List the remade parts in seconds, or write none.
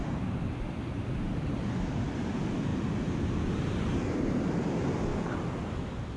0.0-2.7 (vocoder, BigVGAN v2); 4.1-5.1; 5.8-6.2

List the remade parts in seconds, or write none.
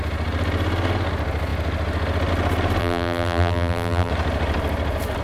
2.8-4.1 (vocoder, BigVGAN v2)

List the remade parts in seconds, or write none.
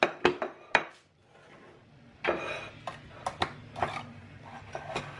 none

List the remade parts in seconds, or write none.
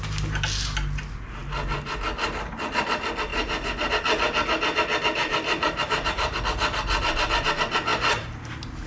5.2-6.4 (vocoder, BigVGAN v2); 7.9-8.5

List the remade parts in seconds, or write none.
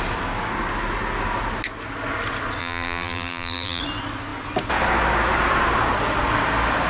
2.6-3.8 (vocoder, BigVGAN v2)